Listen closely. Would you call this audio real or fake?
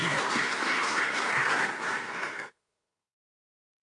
fake